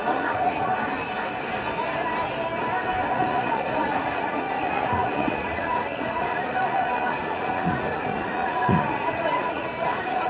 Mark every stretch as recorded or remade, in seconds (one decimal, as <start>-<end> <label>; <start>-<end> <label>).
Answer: 0.0-0.7 remade; 0.7-3.1 recorded; 3.1-10.3 remade